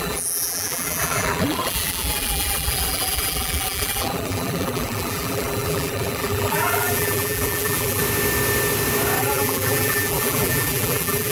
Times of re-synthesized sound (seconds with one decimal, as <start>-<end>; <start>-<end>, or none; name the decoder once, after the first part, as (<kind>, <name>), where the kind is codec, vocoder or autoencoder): 0.0-8.0 (vocoder, BigVGAN v2); 9.2-11.3

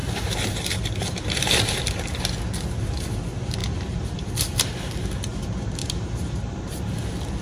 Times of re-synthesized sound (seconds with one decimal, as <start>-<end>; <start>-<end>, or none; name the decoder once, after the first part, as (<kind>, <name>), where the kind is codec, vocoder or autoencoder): 0.0-1.8 (vocoder, BigVGAN v2); 3.6-4.3; 5.8-6.9

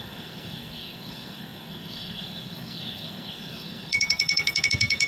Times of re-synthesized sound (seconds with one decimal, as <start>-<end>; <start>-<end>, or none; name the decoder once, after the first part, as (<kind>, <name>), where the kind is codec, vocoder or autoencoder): 0.0-5.1 (codec, SNAC)

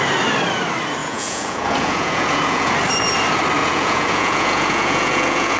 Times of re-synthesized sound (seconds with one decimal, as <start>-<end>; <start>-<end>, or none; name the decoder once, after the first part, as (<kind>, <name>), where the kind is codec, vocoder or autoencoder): 1.0-2.7 (vocoder, Vocos); 3.6-5.6

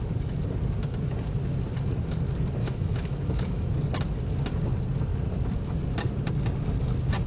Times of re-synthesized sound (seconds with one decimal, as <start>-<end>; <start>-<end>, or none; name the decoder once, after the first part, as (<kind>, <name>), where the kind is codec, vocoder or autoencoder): 2.6-3.8 (autoencoder, DAC-VAE)

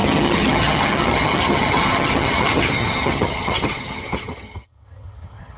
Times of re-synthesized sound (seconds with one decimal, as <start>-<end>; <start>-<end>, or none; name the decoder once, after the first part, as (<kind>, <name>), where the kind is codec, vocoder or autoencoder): 0.0-5.6 (vocoder, HiFi-GAN)

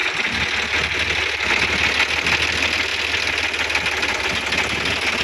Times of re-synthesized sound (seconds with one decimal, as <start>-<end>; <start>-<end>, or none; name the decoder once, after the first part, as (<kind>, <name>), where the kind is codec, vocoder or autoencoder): none